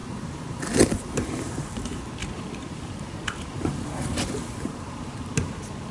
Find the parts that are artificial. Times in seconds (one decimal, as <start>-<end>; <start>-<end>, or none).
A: 0.0-0.6; 2.2-5.2